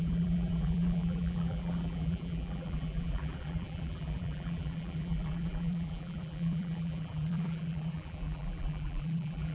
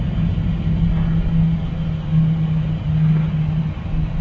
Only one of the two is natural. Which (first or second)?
second